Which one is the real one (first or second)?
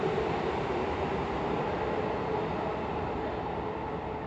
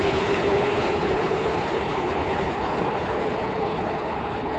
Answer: first